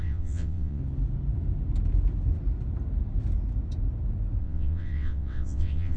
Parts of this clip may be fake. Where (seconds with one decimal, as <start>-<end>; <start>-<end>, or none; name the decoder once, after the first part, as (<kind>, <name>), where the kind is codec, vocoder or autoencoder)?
0.0-0.8 (vocoder, WaveNeXt); 4.4-6.0